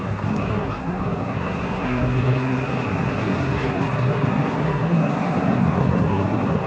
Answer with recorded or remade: remade